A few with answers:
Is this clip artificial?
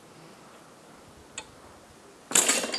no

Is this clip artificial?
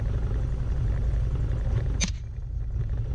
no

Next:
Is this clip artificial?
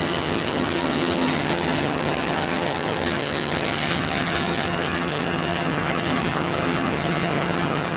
yes